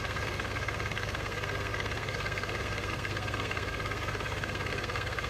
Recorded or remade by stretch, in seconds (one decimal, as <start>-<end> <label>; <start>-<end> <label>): 0.0-5.3 remade

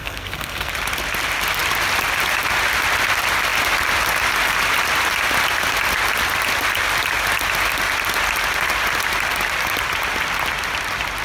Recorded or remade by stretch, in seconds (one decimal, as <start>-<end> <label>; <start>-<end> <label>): 0.0-0.7 remade; 0.7-11.2 recorded

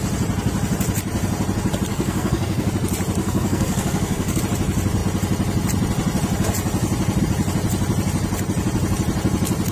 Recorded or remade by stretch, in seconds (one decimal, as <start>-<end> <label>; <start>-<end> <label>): 0.0-1.9 recorded; 1.9-2.7 remade; 2.7-3.2 recorded; 3.2-4.4 remade; 4.4-9.7 recorded

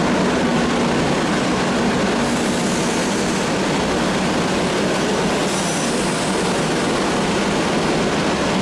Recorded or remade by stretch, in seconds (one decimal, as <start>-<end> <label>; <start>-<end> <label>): 0.0-8.6 recorded

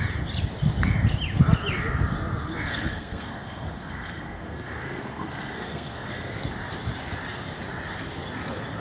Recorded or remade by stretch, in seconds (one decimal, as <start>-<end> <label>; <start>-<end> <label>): 0.0-2.7 recorded; 2.7-6.3 remade; 6.3-8.8 recorded

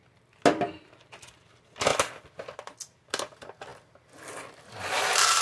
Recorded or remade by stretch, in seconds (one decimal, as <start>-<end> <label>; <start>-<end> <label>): 0.0-5.4 recorded

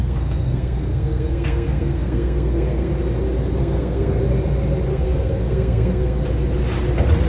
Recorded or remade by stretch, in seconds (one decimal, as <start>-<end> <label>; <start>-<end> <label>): 0.0-2.9 remade; 2.9-3.6 recorded; 3.6-4.2 remade; 4.2-4.9 recorded; 4.9-6.2 remade; 6.2-7.3 recorded

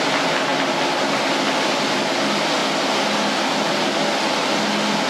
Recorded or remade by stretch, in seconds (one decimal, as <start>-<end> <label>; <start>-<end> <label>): 0.0-5.1 recorded